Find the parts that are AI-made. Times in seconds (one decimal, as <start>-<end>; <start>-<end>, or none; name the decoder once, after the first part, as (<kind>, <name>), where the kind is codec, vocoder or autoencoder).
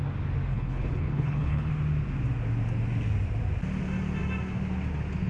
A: 0.5-1.7 (codec, HILCodec)